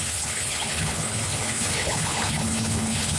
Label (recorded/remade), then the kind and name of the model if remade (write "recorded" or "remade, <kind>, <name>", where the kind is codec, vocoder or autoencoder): remade, codec, HILCodec